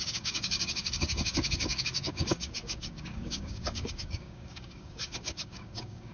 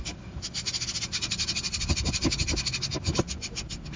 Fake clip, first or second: first